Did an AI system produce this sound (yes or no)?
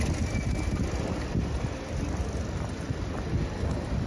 no